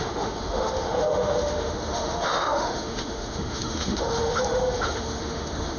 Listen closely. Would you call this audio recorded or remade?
remade